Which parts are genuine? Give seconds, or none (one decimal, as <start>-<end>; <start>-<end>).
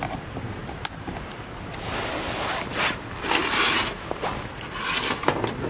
0.0-5.7